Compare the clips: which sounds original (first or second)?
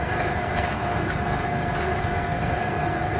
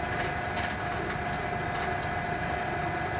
second